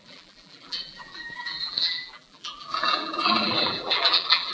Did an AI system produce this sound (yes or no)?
yes